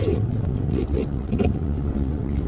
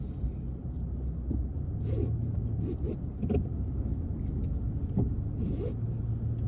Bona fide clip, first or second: second